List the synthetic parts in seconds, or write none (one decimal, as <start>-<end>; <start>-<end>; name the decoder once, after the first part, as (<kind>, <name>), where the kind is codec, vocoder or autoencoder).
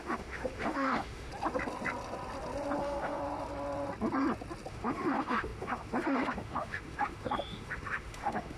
0.0-1.3 (autoencoder, DAC-VAE); 2.8-3.2; 4.7-8.6